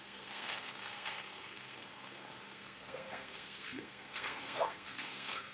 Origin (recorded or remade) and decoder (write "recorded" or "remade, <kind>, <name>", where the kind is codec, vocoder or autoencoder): remade, codec, SNAC